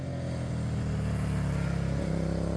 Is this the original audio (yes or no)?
yes